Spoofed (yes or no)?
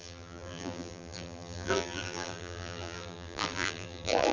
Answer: yes